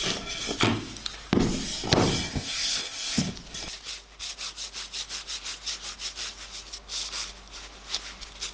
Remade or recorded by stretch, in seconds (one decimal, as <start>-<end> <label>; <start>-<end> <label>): 0.0-2.3 recorded; 2.3-3.2 remade; 3.2-8.5 recorded